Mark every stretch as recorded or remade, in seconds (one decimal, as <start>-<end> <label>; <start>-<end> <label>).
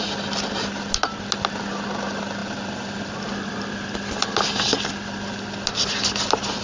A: 0.0-6.6 recorded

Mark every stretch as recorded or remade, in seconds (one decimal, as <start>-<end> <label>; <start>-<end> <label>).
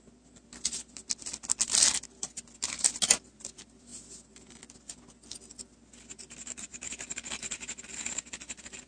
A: 0.0-8.9 recorded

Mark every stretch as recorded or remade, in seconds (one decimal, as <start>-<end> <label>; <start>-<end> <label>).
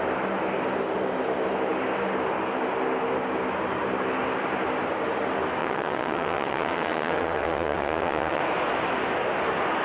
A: 0.0-5.6 recorded; 5.6-8.4 remade; 8.4-9.8 recorded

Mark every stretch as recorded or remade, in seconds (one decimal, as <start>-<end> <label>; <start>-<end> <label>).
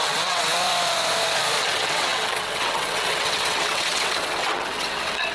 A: 0.0-0.5 remade; 0.5-1.6 recorded; 1.6-5.3 remade